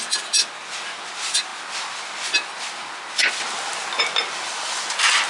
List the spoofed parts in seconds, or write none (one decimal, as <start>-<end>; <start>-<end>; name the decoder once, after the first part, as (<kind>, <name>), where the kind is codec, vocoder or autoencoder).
none